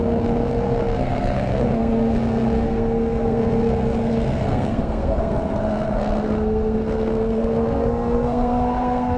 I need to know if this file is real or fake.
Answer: fake